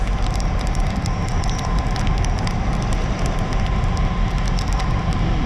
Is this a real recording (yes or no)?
yes